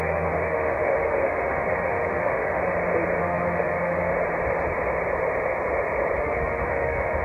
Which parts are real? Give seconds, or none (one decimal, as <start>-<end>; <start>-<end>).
2.6-3.2; 4.1-6.2